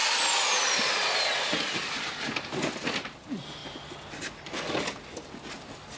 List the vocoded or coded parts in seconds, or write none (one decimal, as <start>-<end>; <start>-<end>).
none